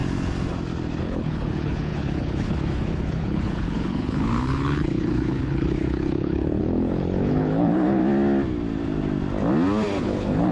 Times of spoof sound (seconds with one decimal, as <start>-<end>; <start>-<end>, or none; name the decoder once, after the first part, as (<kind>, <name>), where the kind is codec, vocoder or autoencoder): 1.0-8.0 (codec, HILCodec); 10.0-10.5